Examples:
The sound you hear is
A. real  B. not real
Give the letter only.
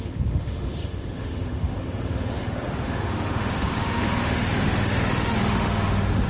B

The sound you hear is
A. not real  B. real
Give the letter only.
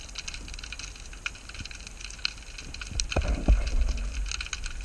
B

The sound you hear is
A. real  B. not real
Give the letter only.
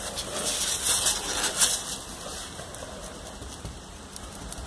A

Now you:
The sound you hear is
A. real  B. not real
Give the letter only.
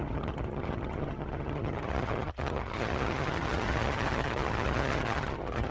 B